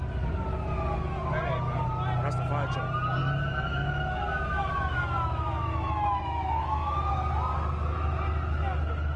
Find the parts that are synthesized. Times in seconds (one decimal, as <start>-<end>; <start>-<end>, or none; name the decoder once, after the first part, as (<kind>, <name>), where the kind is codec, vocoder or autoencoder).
3.2-7.1 (autoencoder, DAC-VAE)